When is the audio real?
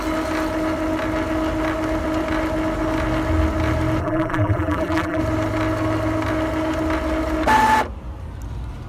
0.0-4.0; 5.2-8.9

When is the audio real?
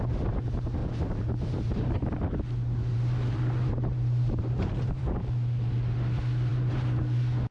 0.0-0.8; 5.3-6.5; 7.0-7.5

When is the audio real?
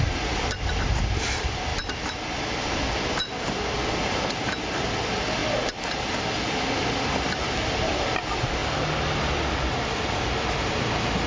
0.0-11.3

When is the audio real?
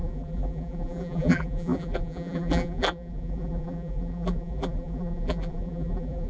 none